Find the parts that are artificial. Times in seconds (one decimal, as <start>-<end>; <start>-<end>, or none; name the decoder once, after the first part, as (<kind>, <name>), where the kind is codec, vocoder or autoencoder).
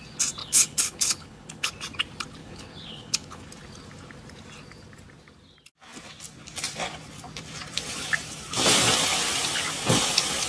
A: 0.4-1.7 (codec, HILCodec); 2.4-3.4